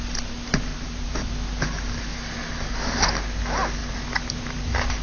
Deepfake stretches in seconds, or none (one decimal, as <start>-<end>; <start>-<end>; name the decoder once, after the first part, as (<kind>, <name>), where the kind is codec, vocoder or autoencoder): 0.7-1.3 (vocoder, BigVGAN v2)